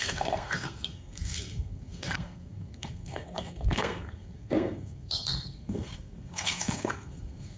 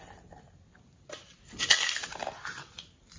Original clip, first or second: second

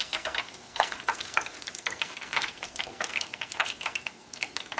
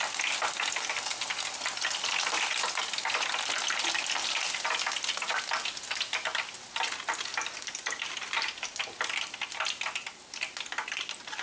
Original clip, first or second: second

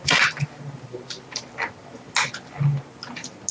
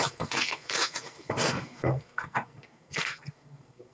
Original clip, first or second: first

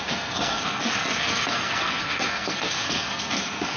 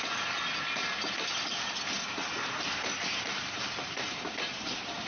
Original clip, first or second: second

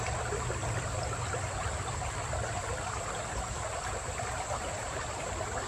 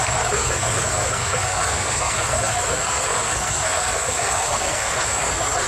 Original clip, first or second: first